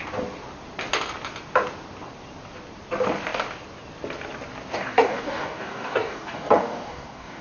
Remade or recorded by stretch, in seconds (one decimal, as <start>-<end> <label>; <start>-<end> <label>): 0.0-4.7 recorded; 4.7-7.4 remade